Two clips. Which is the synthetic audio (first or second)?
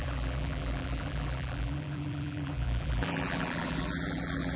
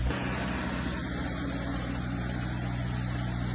first